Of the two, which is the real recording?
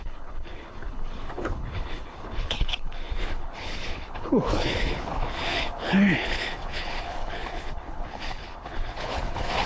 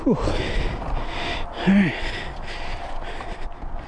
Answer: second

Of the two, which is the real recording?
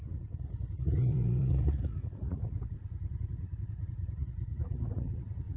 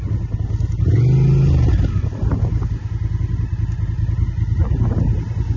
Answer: second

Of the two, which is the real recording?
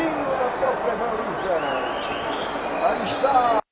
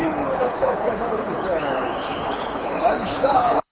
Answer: first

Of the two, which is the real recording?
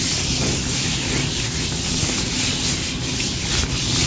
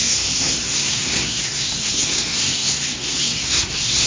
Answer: first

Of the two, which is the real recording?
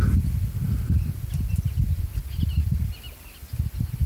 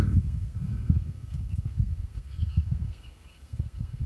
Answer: first